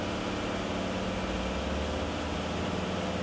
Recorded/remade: recorded